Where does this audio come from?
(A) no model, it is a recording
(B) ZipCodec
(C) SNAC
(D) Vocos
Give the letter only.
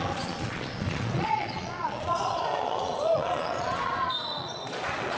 D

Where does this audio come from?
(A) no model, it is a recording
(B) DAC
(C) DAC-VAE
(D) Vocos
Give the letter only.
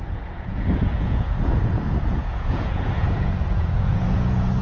D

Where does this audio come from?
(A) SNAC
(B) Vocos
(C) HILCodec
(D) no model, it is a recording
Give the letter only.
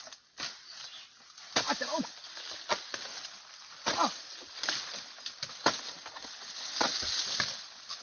D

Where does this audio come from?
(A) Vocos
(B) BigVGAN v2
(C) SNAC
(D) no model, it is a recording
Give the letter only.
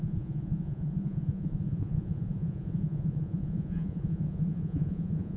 A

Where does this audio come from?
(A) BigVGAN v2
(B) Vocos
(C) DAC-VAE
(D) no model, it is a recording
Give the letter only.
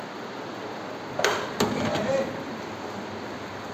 D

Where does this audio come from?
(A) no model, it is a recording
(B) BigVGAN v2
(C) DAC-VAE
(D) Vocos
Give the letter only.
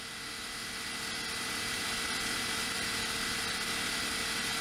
A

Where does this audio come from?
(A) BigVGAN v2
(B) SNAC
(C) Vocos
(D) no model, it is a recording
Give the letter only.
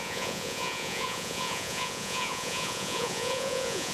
C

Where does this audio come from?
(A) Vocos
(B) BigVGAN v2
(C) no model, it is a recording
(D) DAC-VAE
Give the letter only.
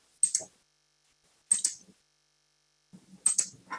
C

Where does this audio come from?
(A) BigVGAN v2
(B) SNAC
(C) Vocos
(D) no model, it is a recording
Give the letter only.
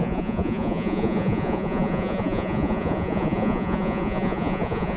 C